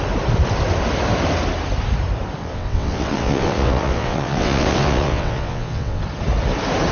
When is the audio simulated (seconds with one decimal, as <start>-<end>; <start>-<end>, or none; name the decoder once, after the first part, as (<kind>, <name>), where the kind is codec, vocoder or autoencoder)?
2.4-6.0 (vocoder, WaveNeXt)